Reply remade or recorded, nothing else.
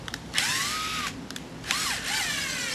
recorded